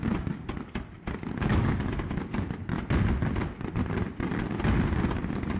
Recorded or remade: recorded